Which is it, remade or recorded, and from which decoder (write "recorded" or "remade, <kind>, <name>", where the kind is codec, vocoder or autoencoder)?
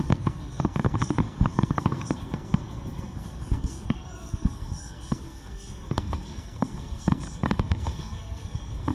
remade, codec, SNAC